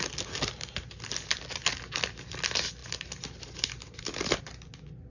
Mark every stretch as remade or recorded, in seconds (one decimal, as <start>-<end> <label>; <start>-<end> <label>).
0.0-5.1 recorded